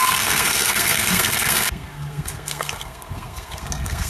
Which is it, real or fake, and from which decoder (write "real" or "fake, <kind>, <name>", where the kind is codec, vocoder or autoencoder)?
fake, codec, SNAC